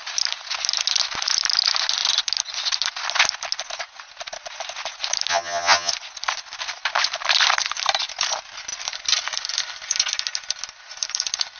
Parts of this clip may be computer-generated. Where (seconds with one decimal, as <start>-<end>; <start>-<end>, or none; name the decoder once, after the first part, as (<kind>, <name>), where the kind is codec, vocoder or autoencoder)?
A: 5.3-5.9 (vocoder, HiFi-GAN)

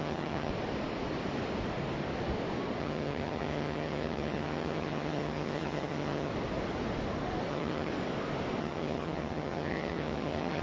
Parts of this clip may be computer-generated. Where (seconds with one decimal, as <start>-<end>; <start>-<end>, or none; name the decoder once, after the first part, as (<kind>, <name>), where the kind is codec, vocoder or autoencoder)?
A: 0.0-0.5 (vocoder, HiFi-GAN); 2.8-6.3; 7.5-7.9; 8.6-10.6

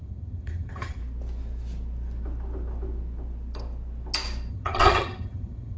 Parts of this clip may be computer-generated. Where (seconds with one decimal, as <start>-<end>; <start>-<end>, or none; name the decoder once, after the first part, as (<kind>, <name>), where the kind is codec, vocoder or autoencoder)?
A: 0.0-1.0 (vocoder, HiFi-GAN); 4.5-5.8

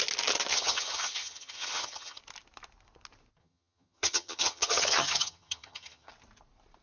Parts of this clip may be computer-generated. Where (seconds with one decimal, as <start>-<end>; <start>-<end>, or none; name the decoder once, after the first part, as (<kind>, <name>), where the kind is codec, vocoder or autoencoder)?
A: 0.5-2.2 (vocoder, HiFi-GAN); 3.4-6.1

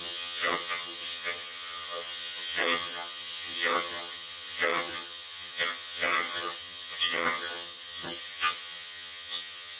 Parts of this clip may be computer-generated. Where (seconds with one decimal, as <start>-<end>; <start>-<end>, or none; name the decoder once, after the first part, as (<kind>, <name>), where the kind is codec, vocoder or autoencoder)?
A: 0.0-9.8 (vocoder, HiFi-GAN)

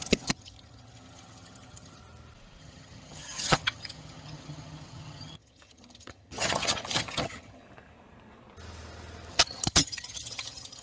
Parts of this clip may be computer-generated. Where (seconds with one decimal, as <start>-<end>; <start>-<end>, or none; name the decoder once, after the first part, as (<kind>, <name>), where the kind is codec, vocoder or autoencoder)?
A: 0.0-2.0 (vocoder, HiFi-GAN); 2.6-7.6; 9.3-10.8

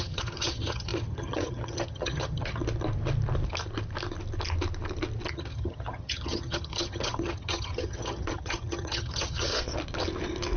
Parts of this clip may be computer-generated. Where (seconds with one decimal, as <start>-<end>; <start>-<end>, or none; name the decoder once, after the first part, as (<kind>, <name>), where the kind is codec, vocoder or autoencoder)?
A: 0.0-2.6 (vocoder, HiFi-GAN); 5.3-9.5

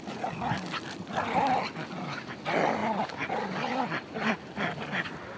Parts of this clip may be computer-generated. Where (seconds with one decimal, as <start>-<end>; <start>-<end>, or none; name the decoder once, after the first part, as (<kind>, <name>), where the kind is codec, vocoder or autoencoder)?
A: none